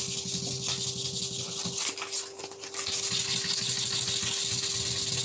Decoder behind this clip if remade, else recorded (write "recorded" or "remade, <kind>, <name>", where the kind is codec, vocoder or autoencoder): recorded